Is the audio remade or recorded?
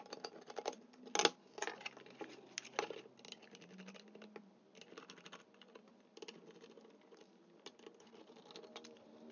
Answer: recorded